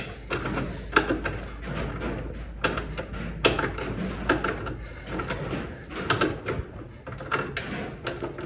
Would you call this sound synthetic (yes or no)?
no